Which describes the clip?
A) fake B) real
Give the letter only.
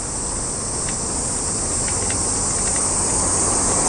B